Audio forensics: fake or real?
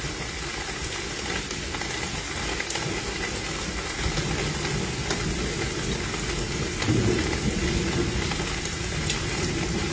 real